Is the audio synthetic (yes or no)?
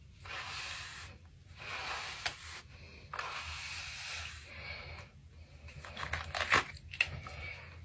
no